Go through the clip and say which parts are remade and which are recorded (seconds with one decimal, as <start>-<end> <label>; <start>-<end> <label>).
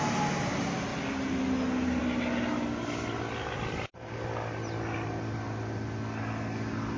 0.0-7.0 recorded